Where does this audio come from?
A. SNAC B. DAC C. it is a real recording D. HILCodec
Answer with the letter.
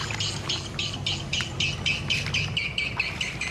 C